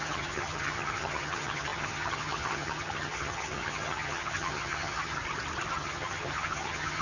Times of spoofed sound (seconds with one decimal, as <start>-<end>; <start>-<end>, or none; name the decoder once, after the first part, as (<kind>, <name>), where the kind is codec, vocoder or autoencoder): 0.0-5.2 (vocoder, HiFi-GAN); 5.7-7.0